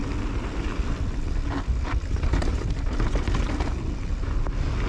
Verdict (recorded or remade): recorded